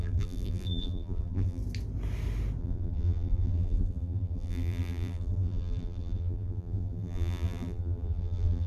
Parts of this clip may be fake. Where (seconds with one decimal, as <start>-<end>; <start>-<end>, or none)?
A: 0.0-1.6; 2.6-8.7